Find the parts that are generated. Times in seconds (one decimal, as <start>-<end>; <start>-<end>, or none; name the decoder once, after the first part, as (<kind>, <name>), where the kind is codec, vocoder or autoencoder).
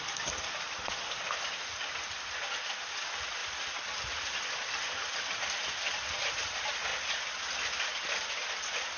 none